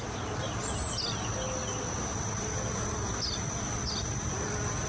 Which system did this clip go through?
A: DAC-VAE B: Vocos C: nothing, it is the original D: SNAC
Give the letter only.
C